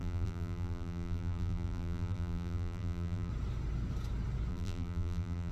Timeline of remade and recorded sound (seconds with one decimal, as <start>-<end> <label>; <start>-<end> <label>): 0.0-3.3 remade; 3.3-4.5 recorded; 4.5-5.5 remade